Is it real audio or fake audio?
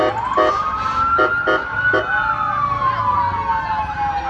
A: real